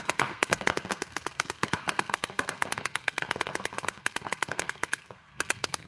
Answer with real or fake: fake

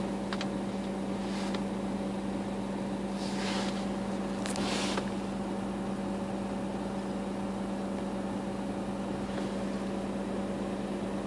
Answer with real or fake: real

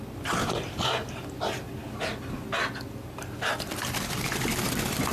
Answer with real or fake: real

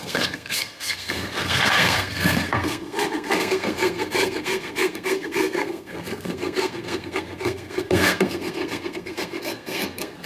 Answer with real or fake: fake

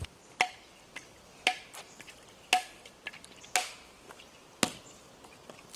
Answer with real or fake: real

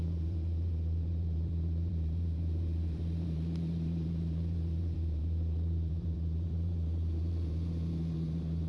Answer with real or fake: fake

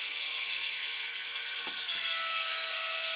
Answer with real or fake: fake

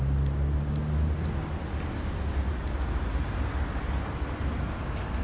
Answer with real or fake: real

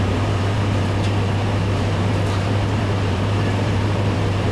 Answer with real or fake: fake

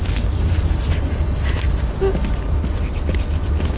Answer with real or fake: real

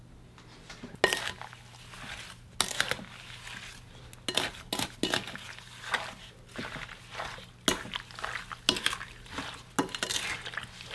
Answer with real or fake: real